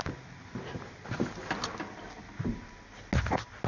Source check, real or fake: real